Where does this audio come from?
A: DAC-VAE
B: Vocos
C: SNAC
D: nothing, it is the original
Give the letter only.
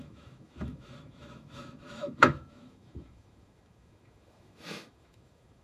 A